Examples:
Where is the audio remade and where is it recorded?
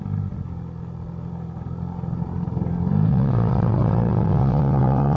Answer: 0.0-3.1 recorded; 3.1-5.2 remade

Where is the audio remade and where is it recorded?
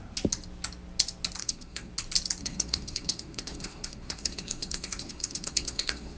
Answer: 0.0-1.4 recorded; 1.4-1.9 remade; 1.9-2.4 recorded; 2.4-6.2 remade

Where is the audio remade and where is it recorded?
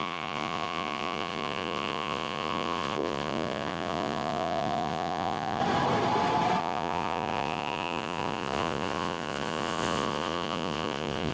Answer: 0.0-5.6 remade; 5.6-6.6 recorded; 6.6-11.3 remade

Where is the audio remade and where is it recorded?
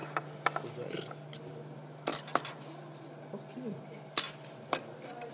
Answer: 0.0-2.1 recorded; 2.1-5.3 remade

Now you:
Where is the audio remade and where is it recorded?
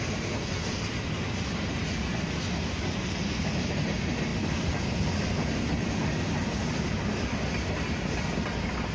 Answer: 0.0-8.9 recorded